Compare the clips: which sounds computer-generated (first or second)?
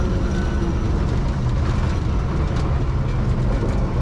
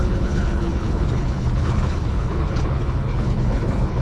second